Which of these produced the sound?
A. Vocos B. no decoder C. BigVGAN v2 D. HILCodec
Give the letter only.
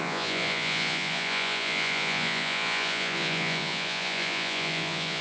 A